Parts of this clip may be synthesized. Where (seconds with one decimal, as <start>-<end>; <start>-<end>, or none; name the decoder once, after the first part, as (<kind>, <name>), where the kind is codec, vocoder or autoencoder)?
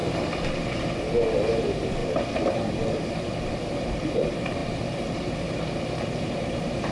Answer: 1.5-6.9 (vocoder, BigVGAN v2)